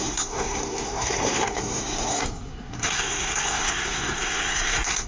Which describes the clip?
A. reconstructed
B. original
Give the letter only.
A